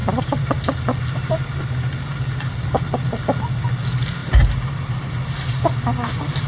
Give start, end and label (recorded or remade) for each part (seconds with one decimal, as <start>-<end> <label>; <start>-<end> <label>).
0.0-6.5 recorded